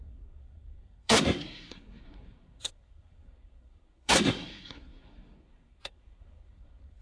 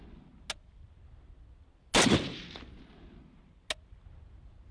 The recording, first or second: second